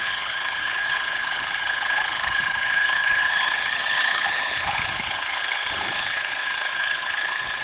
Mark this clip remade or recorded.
remade